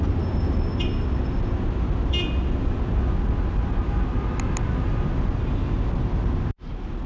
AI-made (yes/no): no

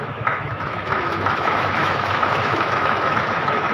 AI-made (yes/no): yes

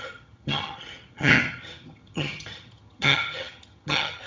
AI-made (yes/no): yes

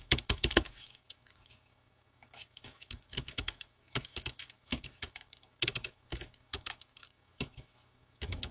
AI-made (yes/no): yes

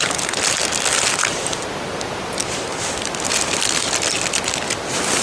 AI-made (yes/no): no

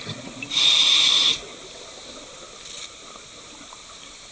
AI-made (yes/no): yes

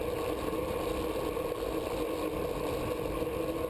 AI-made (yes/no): no